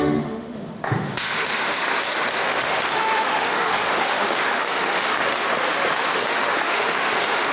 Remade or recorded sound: remade